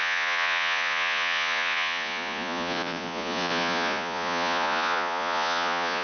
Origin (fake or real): fake